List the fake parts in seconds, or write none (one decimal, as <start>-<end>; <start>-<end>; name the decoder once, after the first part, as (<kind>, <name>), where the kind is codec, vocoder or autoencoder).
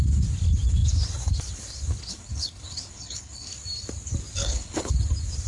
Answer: 2.0-3.5 (codec, HILCodec); 4.4-4.9